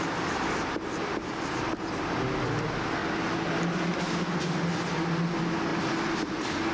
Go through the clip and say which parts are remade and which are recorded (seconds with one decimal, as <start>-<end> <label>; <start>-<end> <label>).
0.0-5.7 recorded; 5.7-6.7 remade